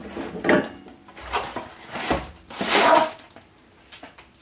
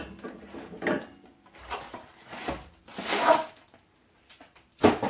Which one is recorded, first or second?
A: first